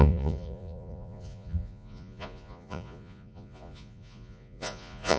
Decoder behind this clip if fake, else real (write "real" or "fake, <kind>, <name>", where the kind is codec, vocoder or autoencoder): fake, vocoder, Vocos